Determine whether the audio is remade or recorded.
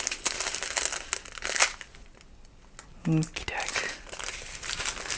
recorded